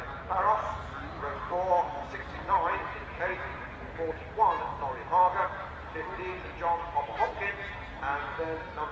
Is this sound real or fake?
real